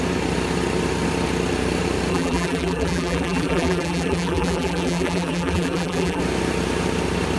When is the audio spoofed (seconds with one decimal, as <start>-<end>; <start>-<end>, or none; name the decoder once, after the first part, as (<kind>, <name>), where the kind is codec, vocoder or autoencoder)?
2.1-6.2 (vocoder, BigVGAN v2)